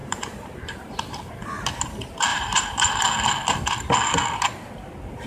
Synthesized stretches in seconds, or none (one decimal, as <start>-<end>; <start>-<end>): 0.0-1.3; 2.3-3.0